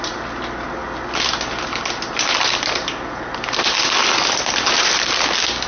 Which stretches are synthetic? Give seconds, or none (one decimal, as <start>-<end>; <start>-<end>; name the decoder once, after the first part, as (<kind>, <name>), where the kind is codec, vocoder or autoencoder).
none